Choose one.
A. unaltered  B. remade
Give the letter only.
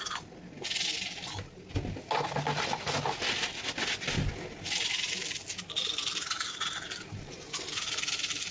A